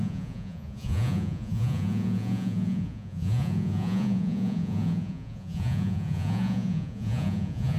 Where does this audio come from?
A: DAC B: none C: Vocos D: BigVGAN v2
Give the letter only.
C